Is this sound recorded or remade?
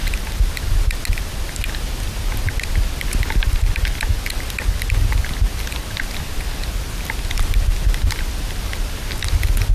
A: recorded